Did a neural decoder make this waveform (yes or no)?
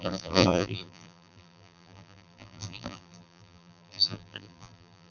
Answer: yes